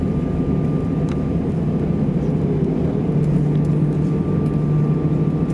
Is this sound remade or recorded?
recorded